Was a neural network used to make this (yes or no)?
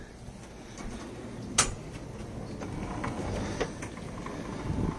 no